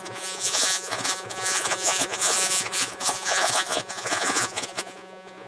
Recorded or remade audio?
remade